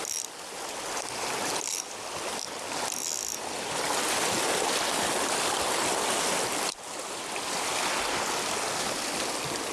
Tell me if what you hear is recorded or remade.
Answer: recorded